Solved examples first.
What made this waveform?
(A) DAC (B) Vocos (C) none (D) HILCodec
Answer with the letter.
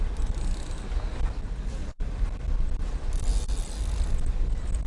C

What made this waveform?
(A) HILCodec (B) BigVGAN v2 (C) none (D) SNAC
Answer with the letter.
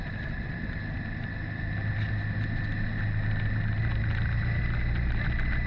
C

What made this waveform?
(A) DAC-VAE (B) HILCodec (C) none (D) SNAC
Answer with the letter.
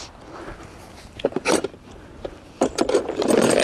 C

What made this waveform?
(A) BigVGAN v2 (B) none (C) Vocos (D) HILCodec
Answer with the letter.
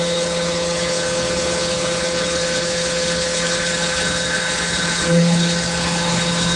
D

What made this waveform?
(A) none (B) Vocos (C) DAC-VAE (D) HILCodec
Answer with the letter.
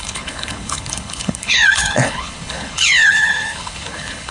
D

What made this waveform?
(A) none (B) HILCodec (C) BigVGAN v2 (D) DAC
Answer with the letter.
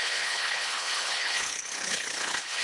B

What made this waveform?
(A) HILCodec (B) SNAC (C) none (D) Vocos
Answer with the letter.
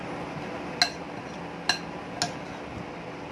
C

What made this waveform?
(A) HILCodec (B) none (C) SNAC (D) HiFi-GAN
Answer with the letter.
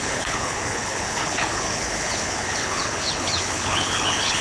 A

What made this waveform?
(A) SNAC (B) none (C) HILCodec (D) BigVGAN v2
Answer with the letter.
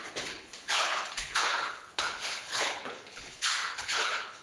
C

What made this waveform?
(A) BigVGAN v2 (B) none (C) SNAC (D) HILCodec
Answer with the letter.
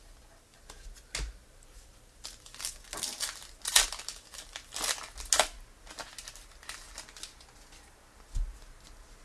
B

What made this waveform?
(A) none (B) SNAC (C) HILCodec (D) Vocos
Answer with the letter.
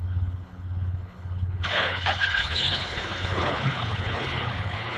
C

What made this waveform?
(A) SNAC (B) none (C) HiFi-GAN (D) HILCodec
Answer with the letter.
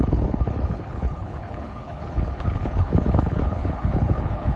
D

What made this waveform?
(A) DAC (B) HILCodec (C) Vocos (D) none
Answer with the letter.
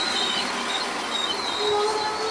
D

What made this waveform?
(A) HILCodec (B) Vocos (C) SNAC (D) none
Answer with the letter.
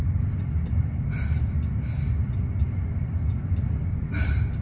D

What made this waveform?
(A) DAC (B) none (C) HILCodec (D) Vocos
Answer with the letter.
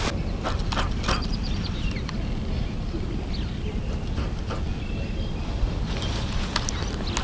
B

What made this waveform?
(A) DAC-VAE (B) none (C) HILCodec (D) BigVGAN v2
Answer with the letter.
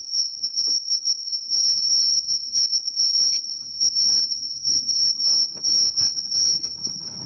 C